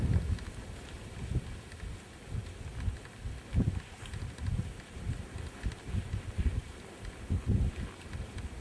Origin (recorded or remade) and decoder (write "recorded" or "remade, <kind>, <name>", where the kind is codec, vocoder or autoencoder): recorded